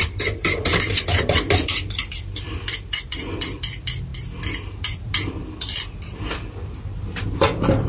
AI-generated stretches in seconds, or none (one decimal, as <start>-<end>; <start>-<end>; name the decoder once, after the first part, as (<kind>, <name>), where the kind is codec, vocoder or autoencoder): 0.0-4.1 (vocoder, BigVGAN v2); 5.3-7.9